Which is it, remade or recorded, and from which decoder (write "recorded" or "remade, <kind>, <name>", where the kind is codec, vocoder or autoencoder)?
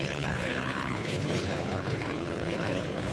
remade, codec, HILCodec